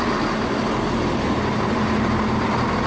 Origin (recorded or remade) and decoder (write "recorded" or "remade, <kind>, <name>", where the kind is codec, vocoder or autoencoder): recorded